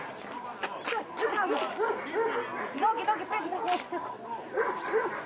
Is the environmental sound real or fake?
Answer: real